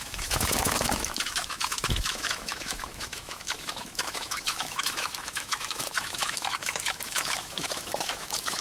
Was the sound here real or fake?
fake